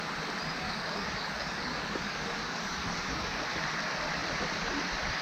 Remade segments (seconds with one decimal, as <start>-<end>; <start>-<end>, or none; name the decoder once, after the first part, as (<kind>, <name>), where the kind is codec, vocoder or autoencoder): 0.6-3.4 (codec, DAC)